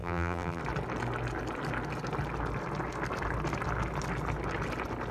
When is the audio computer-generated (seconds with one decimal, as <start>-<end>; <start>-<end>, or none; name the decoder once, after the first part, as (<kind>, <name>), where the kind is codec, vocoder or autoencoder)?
0.0-0.6 (vocoder, BigVGAN v2)